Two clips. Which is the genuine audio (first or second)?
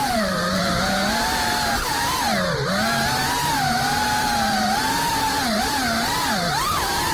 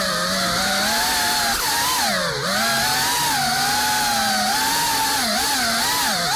second